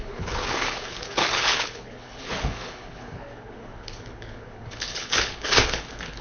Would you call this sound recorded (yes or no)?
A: no